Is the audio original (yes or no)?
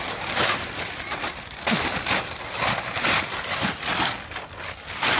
yes